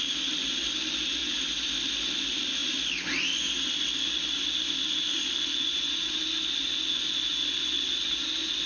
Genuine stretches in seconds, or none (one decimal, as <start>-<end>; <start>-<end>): 0.0-5.5; 6.0-8.7